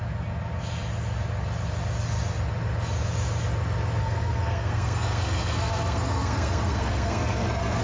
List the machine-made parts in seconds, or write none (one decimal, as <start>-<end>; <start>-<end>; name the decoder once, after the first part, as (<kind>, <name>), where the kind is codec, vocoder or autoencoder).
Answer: 4.0-7.8 (codec, SNAC)